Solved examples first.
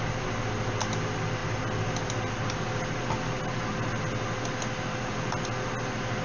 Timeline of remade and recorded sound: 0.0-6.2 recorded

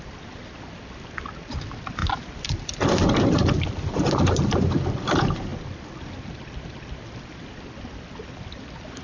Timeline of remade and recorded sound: 0.0-9.0 recorded

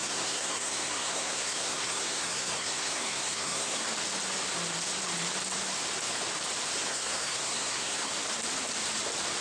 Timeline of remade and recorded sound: 0.0-3.8 remade; 3.8-6.9 recorded; 6.9-8.1 remade; 8.1-9.4 recorded

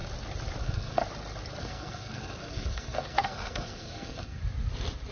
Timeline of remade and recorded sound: 0.0-0.6 recorded; 0.6-1.0 remade; 1.0-1.6 recorded; 1.6-4.4 remade; 4.4-5.1 recorded

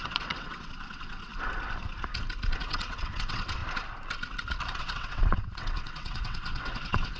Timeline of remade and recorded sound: 0.0-1.3 remade; 1.3-2.6 recorded; 2.6-3.6 remade; 3.6-4.8 recorded; 4.8-7.2 remade

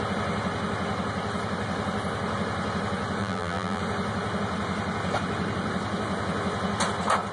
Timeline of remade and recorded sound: 0.0-3.2 recorded; 3.2-3.8 remade; 3.8-7.3 recorded

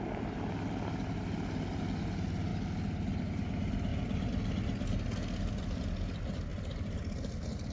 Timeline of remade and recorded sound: 0.0-7.7 recorded

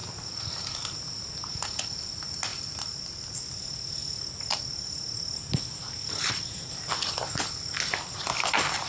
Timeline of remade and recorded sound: 0.0-0.5 remade; 0.5-2.5 recorded; 2.5-3.2 remade; 3.2-8.9 recorded